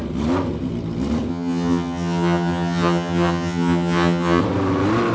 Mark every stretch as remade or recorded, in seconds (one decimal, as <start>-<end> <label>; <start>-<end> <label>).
0.0-1.3 recorded; 1.3-4.4 remade; 4.4-5.1 recorded